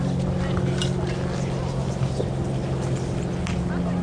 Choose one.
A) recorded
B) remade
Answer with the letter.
A